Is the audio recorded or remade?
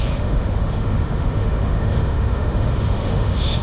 remade